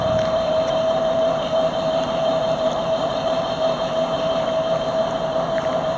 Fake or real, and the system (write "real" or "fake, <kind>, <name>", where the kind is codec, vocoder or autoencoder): fake, vocoder, BigVGAN v2